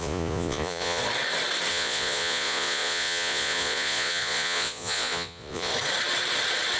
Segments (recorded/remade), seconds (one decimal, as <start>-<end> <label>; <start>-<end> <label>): 0.0-1.0 remade; 1.0-1.7 recorded; 1.7-5.7 remade; 5.7-6.8 recorded